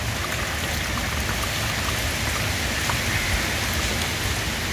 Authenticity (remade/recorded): recorded